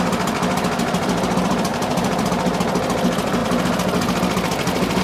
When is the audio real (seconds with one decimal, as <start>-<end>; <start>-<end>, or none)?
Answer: 0.0-1.7; 2.3-5.0